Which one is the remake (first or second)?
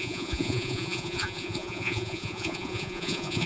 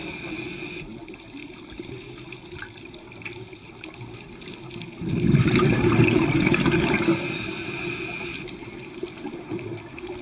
first